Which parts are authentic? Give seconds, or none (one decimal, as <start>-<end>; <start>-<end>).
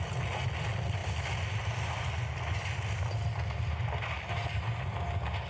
0.0-5.5